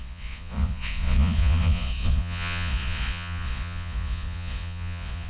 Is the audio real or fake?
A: fake